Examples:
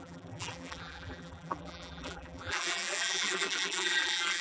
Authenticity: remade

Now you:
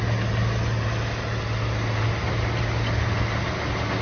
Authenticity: recorded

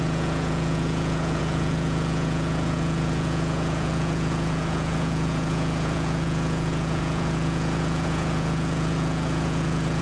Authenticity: remade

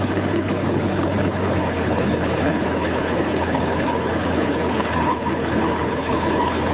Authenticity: remade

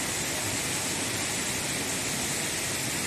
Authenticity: recorded